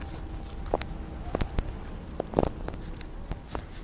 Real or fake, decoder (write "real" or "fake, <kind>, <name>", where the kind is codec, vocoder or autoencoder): real